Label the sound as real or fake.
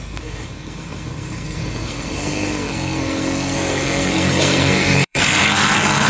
fake